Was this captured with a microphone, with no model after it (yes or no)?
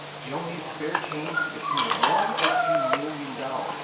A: yes